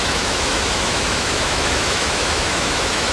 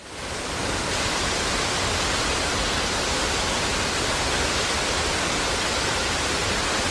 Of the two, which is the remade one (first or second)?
first